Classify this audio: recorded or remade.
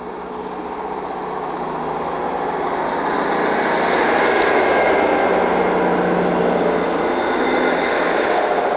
recorded